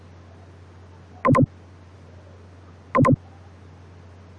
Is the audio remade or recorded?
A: recorded